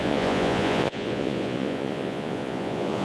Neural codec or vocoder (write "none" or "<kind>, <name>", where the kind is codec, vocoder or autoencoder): vocoder, Vocos